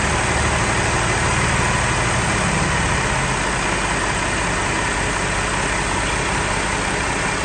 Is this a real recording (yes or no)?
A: yes